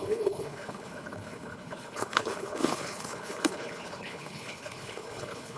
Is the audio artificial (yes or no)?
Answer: yes